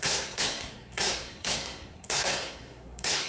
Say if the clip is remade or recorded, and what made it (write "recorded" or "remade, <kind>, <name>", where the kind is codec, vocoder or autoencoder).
remade, codec, SNAC